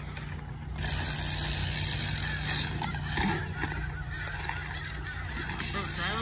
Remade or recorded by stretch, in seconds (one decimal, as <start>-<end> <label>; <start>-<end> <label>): 0.0-6.2 recorded